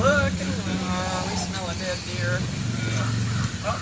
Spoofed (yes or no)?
no